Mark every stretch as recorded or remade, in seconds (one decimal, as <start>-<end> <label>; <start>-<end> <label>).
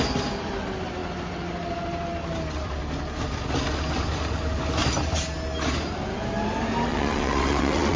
0.0-6.9 recorded; 6.9-8.0 remade